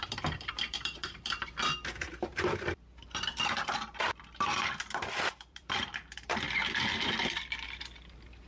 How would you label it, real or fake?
fake